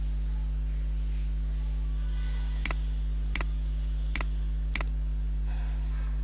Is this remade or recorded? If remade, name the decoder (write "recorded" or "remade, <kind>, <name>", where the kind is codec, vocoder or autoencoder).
recorded